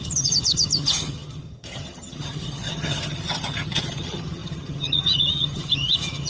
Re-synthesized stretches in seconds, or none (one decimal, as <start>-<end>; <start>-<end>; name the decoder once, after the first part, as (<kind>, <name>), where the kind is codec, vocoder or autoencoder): 0.0-6.3 (vocoder, HiFi-GAN)